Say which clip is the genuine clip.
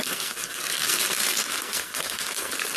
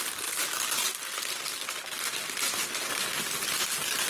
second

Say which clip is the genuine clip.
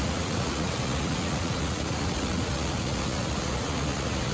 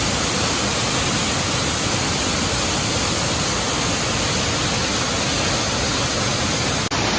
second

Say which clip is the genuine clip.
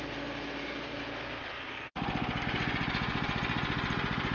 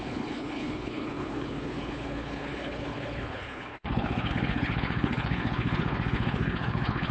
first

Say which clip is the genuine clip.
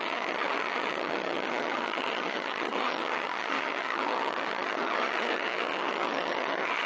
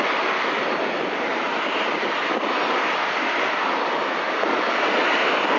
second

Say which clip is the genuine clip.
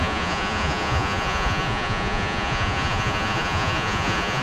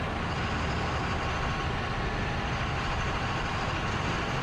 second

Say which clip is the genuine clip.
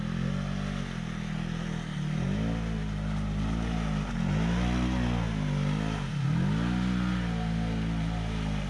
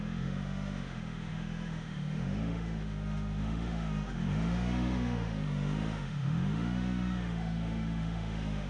first